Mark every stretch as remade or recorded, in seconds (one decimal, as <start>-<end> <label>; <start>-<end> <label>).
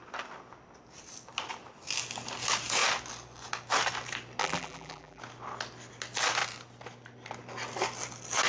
0.0-4.4 recorded; 4.4-5.2 remade; 5.2-8.5 recorded